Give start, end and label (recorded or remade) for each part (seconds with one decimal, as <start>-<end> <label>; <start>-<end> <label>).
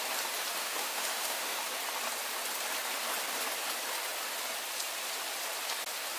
0.0-0.6 recorded; 0.6-1.6 remade; 1.6-6.2 recorded